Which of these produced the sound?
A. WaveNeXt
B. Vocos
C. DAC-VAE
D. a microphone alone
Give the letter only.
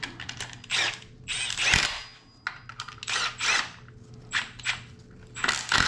D